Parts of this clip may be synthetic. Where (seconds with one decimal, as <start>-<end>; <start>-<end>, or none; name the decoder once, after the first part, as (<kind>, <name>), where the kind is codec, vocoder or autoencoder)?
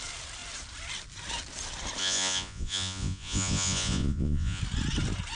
2.0-4.6 (vocoder, Vocos)